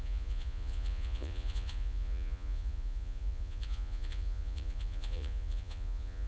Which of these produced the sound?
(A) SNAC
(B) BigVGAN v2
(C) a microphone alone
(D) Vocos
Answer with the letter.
D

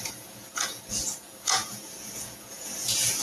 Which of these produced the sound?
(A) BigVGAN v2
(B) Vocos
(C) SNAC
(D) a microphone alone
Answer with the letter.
B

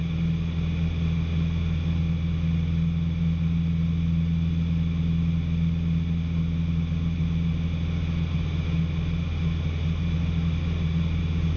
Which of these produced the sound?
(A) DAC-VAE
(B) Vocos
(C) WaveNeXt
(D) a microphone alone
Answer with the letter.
D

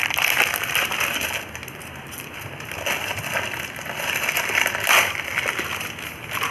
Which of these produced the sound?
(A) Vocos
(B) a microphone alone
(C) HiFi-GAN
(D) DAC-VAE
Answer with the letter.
B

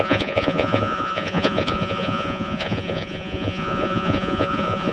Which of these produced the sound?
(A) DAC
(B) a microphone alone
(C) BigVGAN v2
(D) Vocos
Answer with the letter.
D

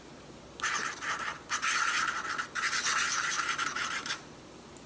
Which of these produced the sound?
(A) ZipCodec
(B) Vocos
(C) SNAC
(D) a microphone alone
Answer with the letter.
D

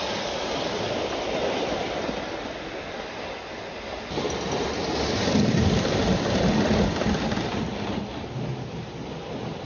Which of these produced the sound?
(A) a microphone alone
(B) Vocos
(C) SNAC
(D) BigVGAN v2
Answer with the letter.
A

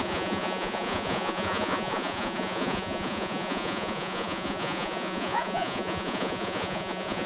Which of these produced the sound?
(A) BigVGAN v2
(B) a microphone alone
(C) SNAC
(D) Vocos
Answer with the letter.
D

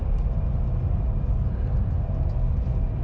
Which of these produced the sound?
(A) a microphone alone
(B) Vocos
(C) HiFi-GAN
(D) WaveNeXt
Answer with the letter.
A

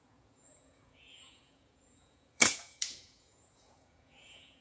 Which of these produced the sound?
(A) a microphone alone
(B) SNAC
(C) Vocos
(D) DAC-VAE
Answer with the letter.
C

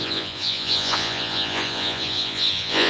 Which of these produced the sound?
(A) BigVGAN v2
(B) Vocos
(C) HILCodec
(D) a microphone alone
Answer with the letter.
B